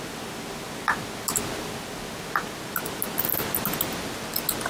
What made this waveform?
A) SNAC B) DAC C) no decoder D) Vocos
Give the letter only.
C